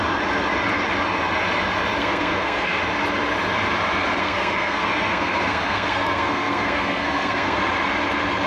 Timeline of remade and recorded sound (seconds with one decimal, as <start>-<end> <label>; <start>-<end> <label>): 0.0-2.0 recorded; 2.0-2.8 remade; 2.8-4.2 recorded; 4.2-7.6 remade; 7.6-8.5 recorded